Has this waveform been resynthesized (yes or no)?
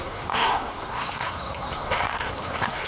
yes